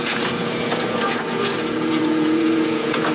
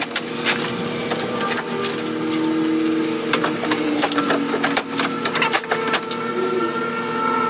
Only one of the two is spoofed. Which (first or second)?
first